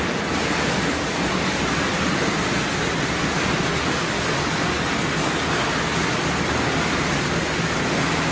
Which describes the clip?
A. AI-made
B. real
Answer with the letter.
B